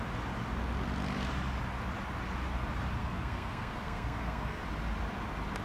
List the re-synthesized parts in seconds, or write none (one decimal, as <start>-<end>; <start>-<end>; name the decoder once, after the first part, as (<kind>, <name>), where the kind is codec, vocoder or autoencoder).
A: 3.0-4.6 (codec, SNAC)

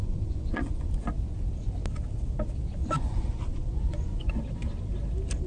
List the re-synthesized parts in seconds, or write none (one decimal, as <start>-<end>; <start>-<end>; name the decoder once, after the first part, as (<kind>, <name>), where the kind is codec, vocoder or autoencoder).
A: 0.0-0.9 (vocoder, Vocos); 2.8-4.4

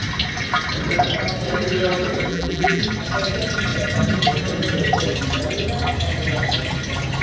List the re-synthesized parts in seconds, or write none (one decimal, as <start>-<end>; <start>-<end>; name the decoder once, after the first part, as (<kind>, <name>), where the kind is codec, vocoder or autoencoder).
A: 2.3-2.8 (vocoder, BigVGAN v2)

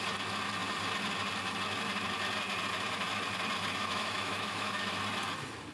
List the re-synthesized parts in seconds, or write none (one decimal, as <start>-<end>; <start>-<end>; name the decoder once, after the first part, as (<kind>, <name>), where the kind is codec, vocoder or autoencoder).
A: 3.8-5.0 (autoencoder, DAC-VAE)

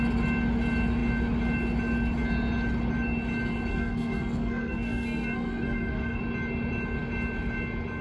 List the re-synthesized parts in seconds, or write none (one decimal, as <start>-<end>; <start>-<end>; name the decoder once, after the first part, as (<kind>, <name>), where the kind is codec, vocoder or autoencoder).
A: 3.7-6.2 (codec, SNAC)